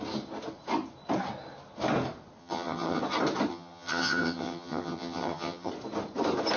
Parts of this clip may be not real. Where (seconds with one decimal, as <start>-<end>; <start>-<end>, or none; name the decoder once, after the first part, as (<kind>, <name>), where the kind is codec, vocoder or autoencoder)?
2.4-3.0 (vocoder, HiFi-GAN); 3.5-5.7